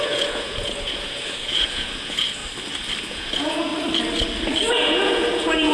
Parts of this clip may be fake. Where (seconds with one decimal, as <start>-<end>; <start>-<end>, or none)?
0.0-2.4; 3.0-3.7; 4.7-5.7